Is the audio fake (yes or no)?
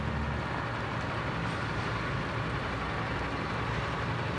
no